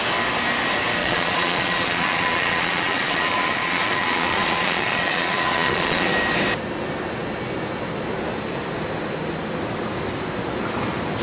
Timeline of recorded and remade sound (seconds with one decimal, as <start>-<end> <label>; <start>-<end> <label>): 0.0-1.0 recorded; 1.0-6.1 remade; 6.1-11.2 recorded